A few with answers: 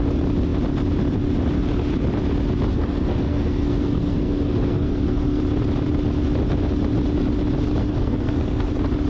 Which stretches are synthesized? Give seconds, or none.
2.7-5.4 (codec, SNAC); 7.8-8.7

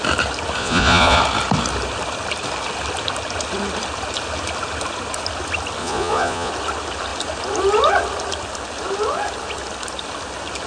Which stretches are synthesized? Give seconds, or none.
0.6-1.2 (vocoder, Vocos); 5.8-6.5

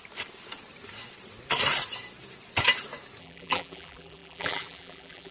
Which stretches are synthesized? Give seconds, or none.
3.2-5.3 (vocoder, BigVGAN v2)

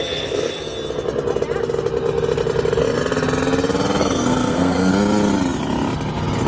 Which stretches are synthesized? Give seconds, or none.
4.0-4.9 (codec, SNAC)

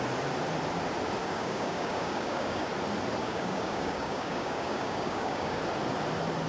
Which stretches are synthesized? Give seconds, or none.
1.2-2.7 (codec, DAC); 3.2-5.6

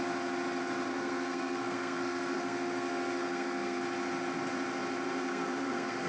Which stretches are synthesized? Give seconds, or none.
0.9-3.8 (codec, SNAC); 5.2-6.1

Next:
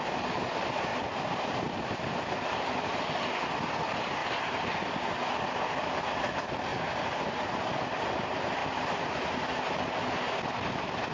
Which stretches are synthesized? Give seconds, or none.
0.9-3.0 (vocoder, BigVGAN v2); 4.2-5.2

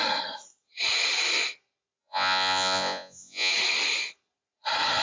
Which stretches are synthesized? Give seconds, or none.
2.0-3.5 (vocoder, Vocos)